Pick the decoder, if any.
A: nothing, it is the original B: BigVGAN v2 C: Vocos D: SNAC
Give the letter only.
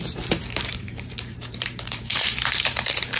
B